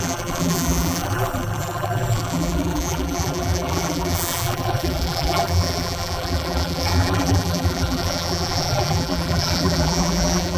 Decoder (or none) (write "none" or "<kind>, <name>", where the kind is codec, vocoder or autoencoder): vocoder, BigVGAN v2